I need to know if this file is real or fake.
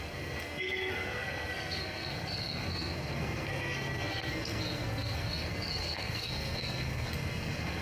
fake